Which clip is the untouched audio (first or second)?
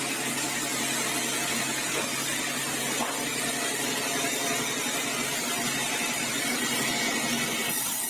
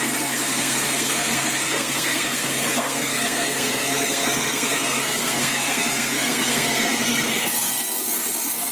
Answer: first